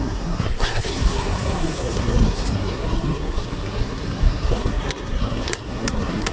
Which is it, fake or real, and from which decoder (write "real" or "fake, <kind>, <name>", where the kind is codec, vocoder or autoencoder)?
fake, codec, SNAC